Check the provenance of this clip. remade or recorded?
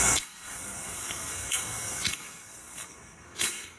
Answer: remade